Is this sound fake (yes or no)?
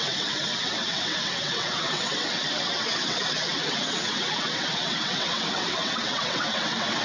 yes